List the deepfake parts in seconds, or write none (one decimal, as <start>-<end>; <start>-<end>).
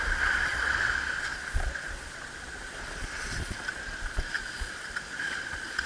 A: 0.0-5.9